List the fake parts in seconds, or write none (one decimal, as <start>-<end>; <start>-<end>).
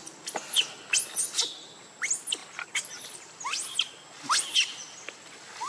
none